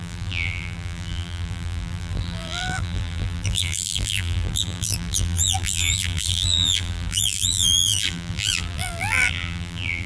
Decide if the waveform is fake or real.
fake